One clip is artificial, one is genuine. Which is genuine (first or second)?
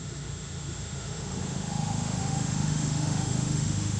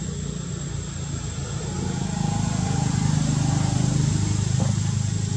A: second